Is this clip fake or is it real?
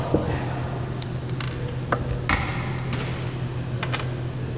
real